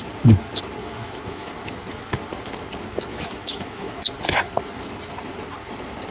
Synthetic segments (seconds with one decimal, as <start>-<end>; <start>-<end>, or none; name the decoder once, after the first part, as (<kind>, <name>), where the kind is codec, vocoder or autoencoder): 0.8-1.5 (autoencoder, DAC-VAE); 3.1-4.0